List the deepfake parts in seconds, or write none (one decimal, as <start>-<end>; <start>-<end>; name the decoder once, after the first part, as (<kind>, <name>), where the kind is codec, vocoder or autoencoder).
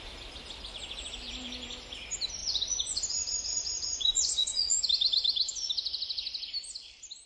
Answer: 2.4-3.0 (vocoder, Vocos); 3.5-4.8